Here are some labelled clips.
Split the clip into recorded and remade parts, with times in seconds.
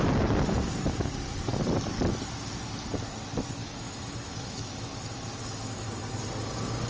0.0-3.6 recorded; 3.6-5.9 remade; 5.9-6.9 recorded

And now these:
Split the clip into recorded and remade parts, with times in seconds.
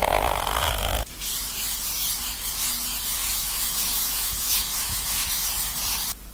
0.0-3.2 recorded; 3.2-5.5 remade; 5.5-6.3 recorded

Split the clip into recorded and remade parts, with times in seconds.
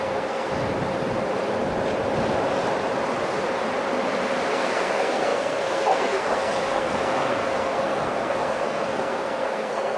0.0-0.5 remade; 0.5-4.5 recorded; 4.5-10.0 remade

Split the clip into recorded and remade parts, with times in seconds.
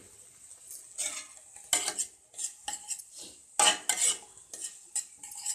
0.0-5.5 recorded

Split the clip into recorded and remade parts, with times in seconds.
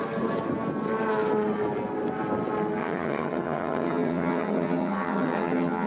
0.0-2.8 recorded; 2.8-5.9 remade